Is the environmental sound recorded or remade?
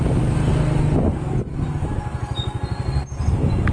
recorded